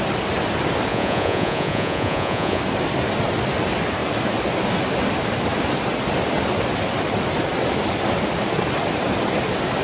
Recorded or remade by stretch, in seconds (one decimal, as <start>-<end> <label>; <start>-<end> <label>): 0.0-0.9 recorded; 0.9-2.6 remade; 2.6-9.8 recorded